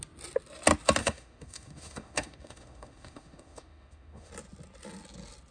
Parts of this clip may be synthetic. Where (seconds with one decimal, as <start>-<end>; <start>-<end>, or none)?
1.0-4.3